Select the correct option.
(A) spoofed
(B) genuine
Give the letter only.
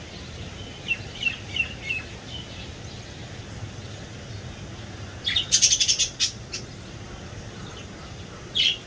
B